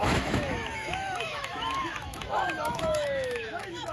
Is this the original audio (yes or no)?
no